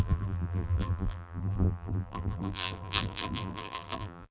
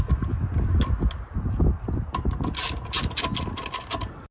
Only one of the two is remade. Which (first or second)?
first